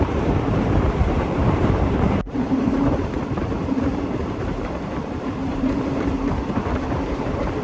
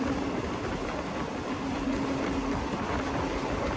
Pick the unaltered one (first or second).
second